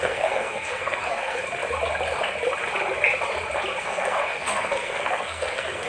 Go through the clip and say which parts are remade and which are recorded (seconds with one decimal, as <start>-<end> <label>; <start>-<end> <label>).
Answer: 0.0-1.4 remade; 1.4-3.8 recorded; 3.8-5.9 remade